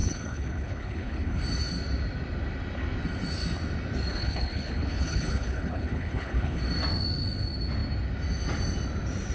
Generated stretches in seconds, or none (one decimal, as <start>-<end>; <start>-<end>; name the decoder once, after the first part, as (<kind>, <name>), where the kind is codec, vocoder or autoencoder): 0.0-1.4 (codec, HILCodec); 4.1-6.6

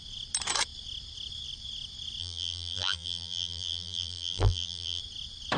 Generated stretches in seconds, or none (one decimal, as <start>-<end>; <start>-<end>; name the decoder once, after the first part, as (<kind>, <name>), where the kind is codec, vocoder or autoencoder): 2.2-5.0 (vocoder, BigVGAN v2)

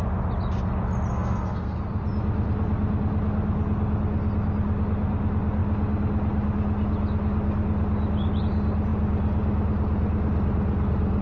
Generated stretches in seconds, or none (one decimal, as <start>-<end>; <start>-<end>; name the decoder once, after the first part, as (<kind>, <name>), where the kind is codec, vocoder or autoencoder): 1.1-1.8 (codec, SNAC)

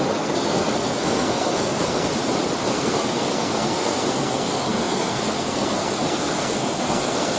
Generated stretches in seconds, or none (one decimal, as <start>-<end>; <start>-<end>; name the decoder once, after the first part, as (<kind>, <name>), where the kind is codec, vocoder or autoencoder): 0.0-2.1 (codec, SNAC); 2.7-7.4

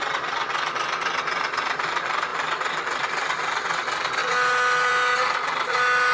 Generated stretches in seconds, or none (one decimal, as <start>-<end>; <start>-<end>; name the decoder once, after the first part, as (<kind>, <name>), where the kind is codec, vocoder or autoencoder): 2.3-3.8 (vocoder, BigVGAN v2)

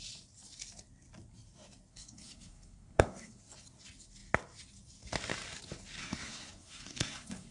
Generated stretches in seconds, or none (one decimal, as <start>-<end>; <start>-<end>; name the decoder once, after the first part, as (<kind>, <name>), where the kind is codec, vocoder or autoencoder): 1.9-3.4 (codec, SNAC); 6.0-7.5

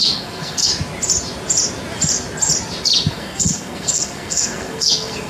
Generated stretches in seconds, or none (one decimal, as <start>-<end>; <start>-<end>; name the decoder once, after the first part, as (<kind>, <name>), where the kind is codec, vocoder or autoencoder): 0.0-0.7 (codec, SNAC); 3.1-5.3